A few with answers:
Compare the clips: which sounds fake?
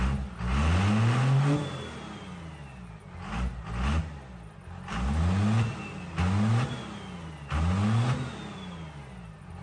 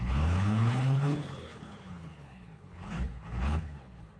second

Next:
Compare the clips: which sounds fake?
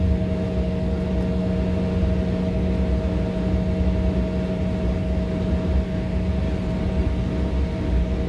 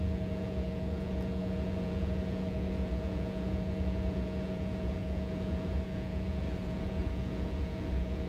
second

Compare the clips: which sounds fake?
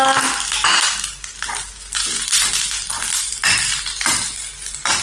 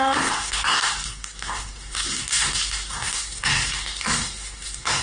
second